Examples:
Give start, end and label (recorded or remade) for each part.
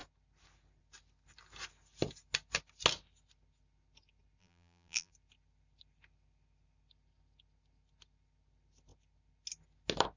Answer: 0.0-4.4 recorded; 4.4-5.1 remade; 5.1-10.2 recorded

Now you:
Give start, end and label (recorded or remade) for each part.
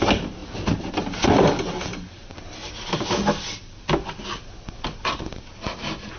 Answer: 0.0-6.2 recorded